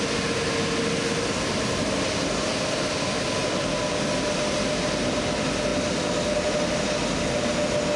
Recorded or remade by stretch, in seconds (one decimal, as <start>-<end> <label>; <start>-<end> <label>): 0.0-8.0 recorded